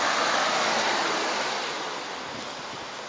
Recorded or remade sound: recorded